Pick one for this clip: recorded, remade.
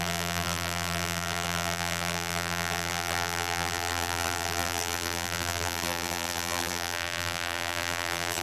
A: remade